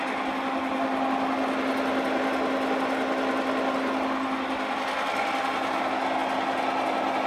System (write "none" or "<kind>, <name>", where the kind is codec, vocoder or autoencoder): none